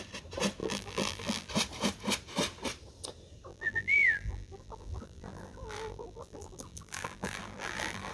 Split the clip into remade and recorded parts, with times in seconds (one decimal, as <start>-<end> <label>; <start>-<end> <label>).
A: 0.0-0.6 recorded; 0.6-1.5 remade; 1.5-3.5 recorded; 3.5-8.1 remade